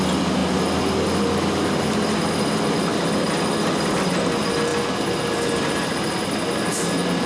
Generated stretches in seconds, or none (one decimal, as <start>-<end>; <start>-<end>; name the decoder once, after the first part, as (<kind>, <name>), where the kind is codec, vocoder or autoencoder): none